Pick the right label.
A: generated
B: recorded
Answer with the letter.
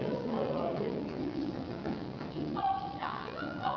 A